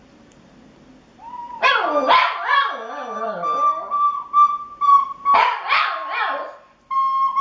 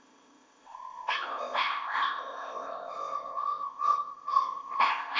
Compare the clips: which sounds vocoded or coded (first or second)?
second